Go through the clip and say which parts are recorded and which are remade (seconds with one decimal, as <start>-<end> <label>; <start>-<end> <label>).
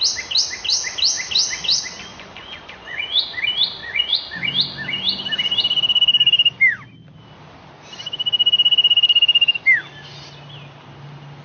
0.0-2.1 recorded; 2.1-3.4 remade; 3.4-3.8 recorded; 3.8-4.5 remade; 4.5-11.4 recorded